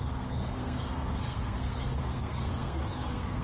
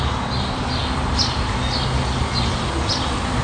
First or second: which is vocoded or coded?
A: first